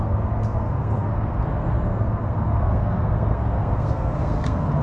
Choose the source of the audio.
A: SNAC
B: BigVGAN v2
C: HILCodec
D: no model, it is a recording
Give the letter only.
A